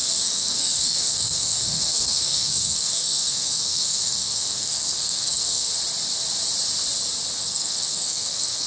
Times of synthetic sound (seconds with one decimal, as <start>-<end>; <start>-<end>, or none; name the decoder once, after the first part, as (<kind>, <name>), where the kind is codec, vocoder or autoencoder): 0.0-5.7 (codec, SNAC); 7.4-8.7